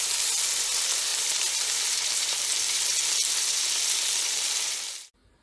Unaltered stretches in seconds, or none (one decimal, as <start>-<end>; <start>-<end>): 0.0-5.4